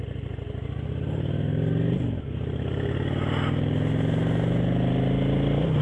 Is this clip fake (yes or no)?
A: no